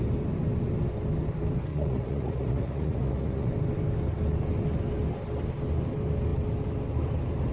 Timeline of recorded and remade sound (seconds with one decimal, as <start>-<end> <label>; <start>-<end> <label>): 0.0-1.7 recorded; 1.7-3.5 remade; 3.5-7.5 recorded